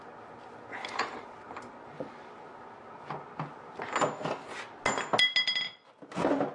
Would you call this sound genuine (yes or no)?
yes